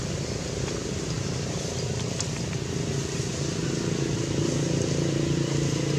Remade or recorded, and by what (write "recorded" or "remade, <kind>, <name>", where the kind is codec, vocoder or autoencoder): recorded